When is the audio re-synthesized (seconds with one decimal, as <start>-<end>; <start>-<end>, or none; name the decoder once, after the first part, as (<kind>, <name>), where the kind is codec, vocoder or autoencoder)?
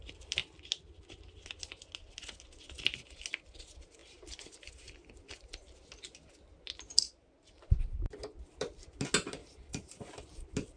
9.4-10.2 (vocoder, BigVGAN v2)